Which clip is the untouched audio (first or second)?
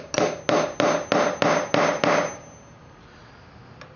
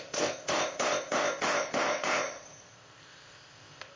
first